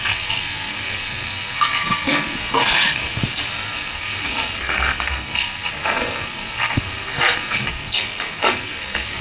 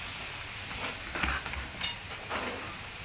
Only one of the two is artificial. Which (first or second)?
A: first